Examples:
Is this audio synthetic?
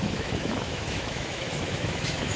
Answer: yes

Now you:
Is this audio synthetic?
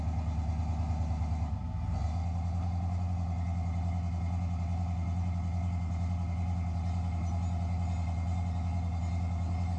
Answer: no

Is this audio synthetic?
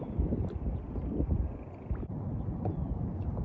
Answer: no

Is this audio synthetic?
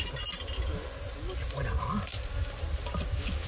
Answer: no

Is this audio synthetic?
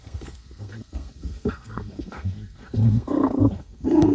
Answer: yes